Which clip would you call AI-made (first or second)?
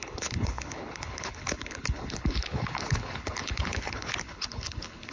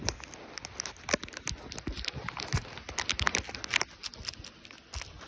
first